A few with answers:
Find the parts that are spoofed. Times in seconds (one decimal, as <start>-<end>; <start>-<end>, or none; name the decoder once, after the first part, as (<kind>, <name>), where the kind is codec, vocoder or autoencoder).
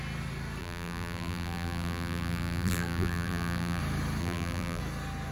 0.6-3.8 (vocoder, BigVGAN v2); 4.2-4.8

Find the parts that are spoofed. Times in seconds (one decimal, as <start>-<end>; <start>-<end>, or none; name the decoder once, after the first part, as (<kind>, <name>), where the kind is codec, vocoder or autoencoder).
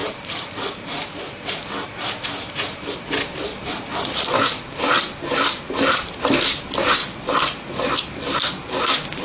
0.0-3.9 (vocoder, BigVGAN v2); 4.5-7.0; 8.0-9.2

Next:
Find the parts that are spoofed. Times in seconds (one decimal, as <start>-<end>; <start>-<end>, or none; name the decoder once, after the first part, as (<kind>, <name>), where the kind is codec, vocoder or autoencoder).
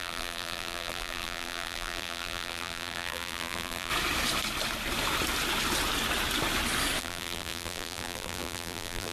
0.0-3.9 (vocoder, BigVGAN v2); 7.0-9.1